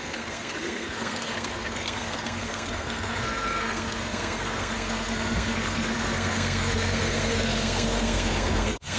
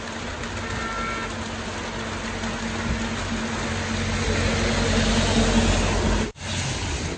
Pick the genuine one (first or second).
second